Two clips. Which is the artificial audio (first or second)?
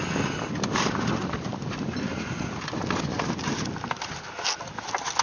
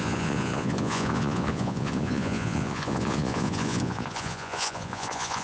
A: second